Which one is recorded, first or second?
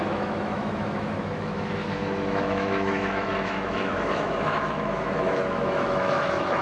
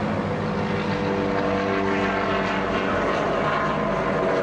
second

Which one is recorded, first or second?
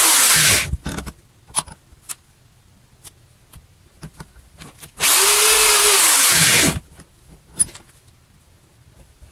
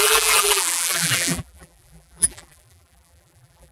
first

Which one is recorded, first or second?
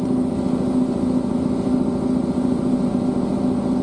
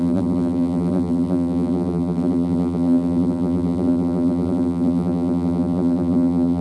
first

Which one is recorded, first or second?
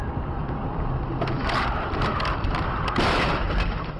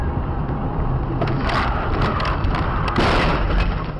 second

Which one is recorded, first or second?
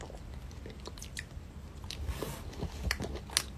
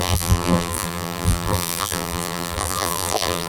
first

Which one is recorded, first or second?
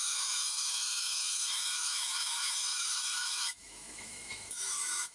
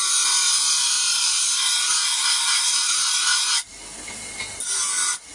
second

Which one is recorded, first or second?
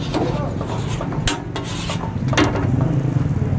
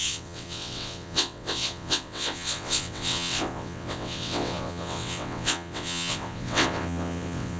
first